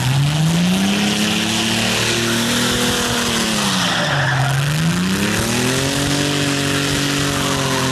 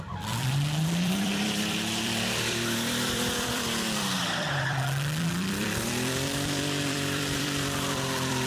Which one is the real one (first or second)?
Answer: first